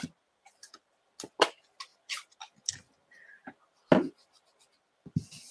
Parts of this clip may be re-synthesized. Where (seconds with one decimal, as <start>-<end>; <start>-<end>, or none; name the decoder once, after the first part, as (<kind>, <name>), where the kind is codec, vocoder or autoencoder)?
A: none